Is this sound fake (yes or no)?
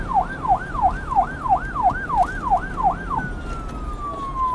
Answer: no